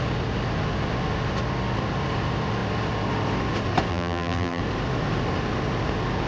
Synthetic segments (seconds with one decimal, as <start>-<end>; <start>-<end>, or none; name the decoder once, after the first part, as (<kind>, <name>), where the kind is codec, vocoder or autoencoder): 3.9-4.6 (vocoder, BigVGAN v2)